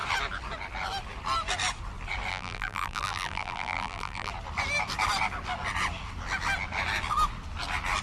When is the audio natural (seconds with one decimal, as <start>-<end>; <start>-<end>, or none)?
0.0-2.3; 4.3-8.0